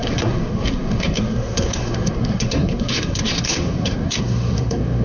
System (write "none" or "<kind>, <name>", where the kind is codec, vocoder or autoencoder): codec, SNAC